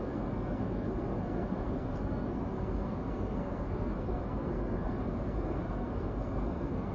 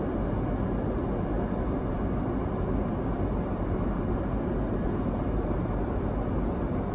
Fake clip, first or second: first